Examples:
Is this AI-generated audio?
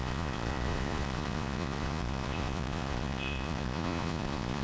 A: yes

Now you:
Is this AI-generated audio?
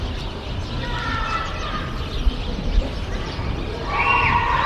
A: no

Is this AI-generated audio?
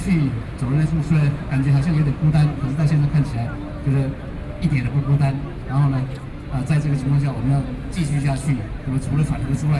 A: no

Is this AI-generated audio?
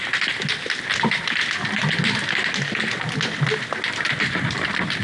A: no